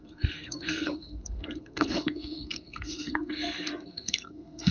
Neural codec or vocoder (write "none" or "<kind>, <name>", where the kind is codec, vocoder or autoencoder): codec, SNAC